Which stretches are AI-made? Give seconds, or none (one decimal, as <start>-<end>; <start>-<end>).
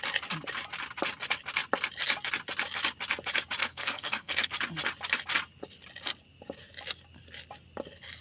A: 3.6-4.5